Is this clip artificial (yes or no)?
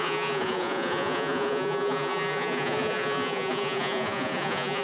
yes